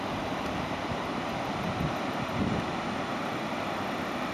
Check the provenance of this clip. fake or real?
fake